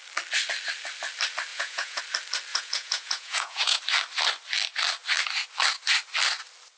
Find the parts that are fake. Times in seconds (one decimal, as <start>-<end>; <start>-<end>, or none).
1.5-2.0; 2.5-3.8